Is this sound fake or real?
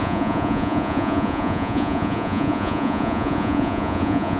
fake